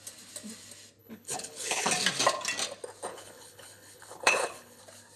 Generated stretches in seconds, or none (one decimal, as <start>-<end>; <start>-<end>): 1.0-1.9; 3.1-4.8